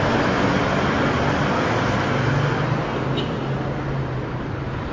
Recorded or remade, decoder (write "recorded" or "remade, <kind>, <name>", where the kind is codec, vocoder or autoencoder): recorded